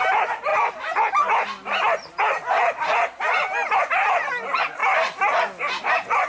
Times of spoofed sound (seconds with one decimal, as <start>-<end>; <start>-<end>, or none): none